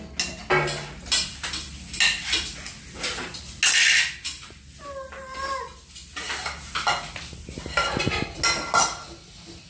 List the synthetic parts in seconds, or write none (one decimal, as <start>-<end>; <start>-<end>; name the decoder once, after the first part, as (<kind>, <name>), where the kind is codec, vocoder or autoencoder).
none